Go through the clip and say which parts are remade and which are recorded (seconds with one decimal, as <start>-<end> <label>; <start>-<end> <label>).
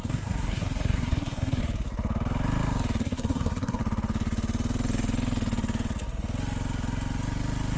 0.0-1.6 remade; 1.6-3.0 recorded; 3.0-3.8 remade; 3.8-7.8 recorded